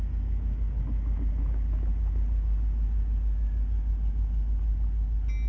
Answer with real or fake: real